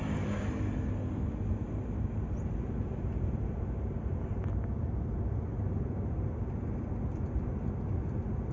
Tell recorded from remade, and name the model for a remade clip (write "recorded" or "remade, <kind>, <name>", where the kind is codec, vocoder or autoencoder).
recorded